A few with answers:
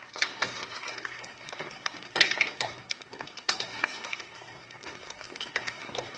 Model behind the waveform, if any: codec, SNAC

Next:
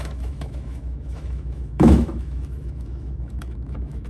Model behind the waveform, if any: autoencoder, DAC-VAE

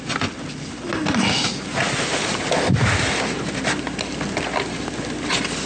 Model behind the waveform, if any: none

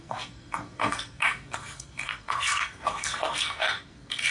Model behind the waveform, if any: codec, SNAC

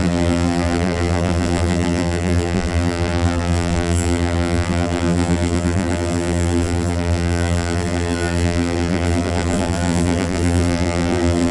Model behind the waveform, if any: vocoder, BigVGAN v2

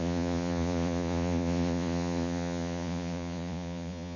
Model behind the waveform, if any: vocoder, Vocos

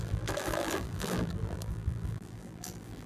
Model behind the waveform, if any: vocoder, BigVGAN v2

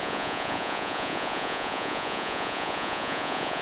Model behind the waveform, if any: vocoder, Vocos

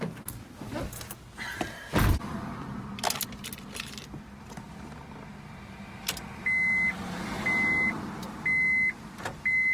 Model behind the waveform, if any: none